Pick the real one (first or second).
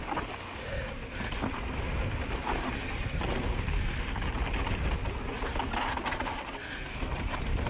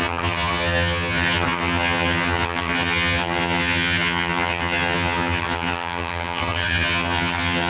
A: first